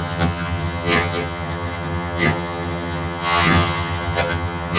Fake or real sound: fake